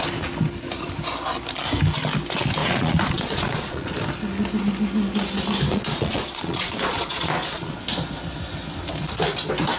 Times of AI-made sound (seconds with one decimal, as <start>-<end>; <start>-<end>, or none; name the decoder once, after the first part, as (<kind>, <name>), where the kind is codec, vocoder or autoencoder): 2.6-3.9 (vocoder, Vocos); 5.7-7.8